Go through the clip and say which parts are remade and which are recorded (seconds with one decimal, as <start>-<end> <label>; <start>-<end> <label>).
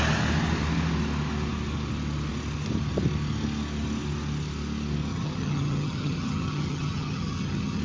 0.0-5.1 recorded; 5.1-7.8 remade